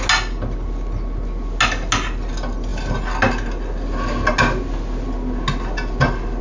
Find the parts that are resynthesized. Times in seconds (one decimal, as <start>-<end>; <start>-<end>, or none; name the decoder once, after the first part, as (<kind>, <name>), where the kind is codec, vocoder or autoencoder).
none

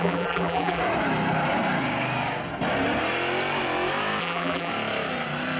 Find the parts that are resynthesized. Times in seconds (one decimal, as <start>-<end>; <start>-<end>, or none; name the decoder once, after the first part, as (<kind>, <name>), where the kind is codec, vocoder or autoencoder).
0.0-0.8 (vocoder, BigVGAN v2); 4.2-4.7